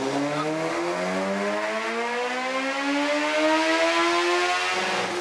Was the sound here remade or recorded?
recorded